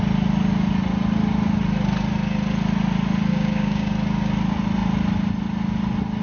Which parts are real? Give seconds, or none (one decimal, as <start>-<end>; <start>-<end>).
0.0-3.3; 3.9-6.2